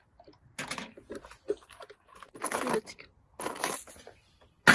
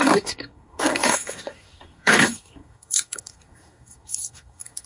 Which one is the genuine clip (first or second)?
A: first